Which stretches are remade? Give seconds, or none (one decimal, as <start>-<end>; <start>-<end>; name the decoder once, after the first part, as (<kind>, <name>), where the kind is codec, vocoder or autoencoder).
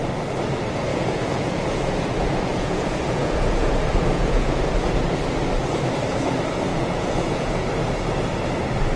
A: 0.9-4.7 (vocoder, Vocos); 6.7-7.7